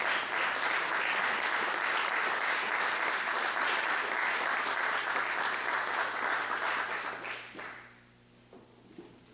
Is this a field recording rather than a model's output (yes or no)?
yes